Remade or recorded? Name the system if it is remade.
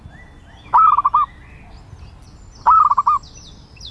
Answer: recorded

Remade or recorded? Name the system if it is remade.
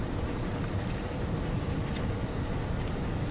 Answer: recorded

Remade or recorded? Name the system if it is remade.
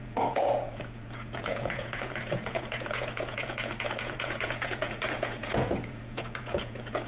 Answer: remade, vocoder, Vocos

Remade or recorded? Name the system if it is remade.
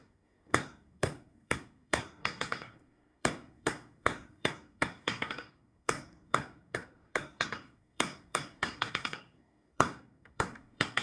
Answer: remade, codec, SNAC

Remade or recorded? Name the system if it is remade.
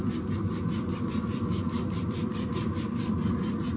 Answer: remade, vocoder, BigVGAN v2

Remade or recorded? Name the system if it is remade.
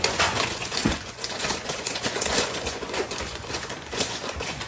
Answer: remade, vocoder, Vocos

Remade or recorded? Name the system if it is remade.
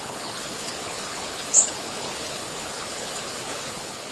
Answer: remade, codec, HILCodec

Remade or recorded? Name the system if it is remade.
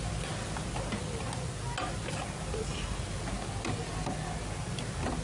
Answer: recorded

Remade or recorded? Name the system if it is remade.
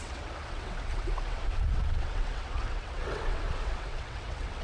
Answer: remade, vocoder, WaveNeXt